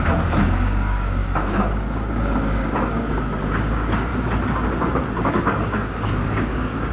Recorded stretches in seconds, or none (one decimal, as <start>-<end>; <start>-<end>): 4.1-5.2